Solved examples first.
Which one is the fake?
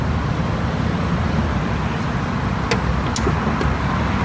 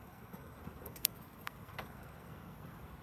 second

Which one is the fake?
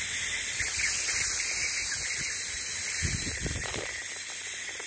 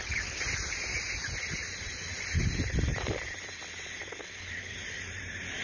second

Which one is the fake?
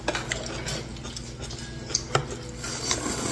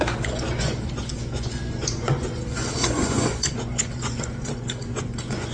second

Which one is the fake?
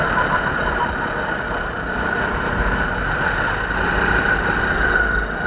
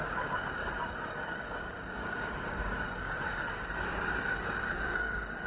second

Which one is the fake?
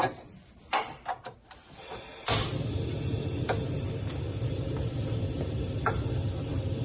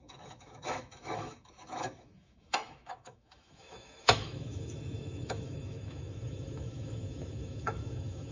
second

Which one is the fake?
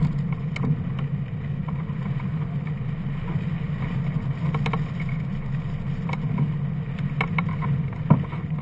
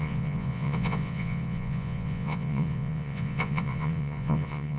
second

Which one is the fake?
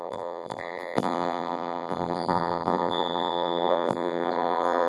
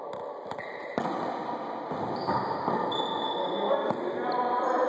first